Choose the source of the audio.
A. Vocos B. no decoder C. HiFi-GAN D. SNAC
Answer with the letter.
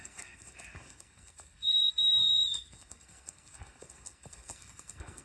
D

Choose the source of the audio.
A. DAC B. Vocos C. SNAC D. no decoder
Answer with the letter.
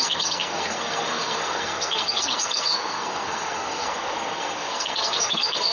C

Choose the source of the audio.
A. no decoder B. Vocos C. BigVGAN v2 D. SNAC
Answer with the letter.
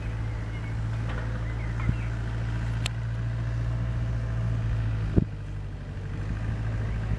A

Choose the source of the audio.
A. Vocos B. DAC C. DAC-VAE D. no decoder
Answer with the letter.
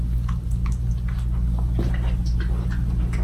D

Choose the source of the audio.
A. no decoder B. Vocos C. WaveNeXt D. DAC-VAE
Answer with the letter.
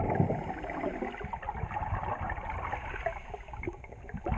A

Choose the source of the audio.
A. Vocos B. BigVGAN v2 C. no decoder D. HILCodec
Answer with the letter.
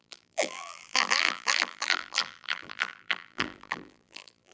B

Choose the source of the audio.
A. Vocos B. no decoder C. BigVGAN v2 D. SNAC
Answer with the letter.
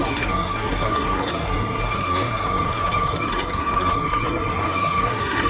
D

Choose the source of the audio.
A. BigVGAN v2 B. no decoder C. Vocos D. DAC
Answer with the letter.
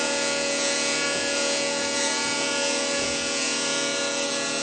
C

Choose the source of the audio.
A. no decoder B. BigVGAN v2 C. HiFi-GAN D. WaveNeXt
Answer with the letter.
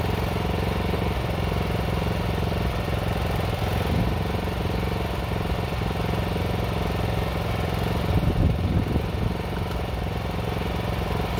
A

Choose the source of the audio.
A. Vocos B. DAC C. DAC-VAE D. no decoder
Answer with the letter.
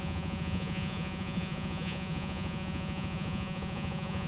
A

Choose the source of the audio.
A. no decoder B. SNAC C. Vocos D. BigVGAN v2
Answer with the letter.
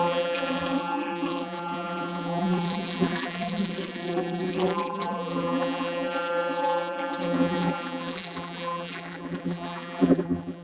D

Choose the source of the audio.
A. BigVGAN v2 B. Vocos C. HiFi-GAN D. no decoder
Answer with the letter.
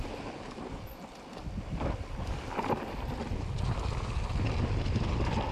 D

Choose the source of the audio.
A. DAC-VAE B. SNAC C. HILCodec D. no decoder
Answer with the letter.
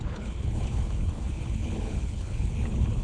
C